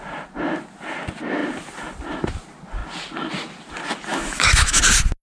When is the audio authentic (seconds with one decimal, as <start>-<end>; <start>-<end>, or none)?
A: 0.0-4.1; 4.8-5.2